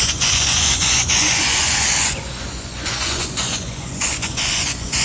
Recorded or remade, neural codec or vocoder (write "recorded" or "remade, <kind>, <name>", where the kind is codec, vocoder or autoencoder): remade, vocoder, Vocos